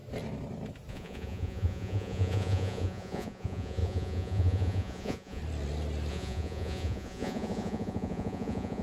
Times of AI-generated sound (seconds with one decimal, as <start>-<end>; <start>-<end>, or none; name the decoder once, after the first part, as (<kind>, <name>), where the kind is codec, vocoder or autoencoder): 0.9-5.4 (vocoder, Vocos); 6.1-8.8

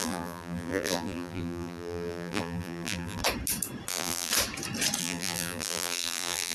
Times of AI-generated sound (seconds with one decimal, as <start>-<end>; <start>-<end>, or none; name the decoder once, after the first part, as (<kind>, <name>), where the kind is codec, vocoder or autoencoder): 0.0-3.2 (vocoder, BigVGAN v2); 3.9-4.3; 5.0-6.5

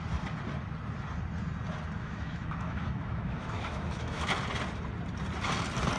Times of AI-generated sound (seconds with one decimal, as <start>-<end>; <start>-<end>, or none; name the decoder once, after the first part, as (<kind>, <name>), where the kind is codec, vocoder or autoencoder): 2.0-4.3 (autoencoder, DAC-VAE)

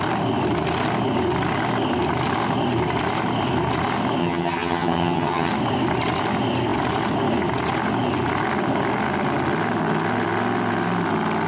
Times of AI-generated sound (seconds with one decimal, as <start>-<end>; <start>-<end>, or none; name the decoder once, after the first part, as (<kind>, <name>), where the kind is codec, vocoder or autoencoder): 4.2-5.5 (vocoder, HiFi-GAN)

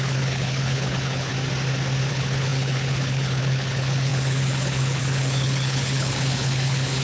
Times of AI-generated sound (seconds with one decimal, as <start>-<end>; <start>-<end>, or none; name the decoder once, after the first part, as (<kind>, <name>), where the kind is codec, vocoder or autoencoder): 0.0-1.3 (codec, HILCodec); 2.1-7.0